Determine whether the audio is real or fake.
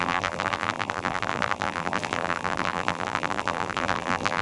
fake